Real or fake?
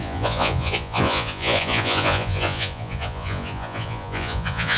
fake